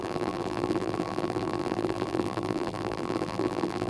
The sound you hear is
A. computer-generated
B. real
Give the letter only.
A